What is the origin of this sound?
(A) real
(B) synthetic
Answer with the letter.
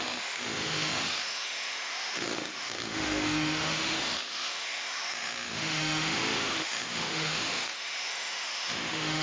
B